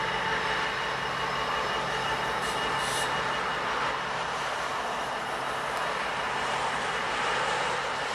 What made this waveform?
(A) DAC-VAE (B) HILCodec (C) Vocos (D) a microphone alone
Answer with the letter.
D